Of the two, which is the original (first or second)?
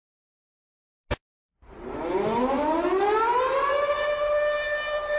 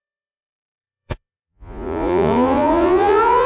first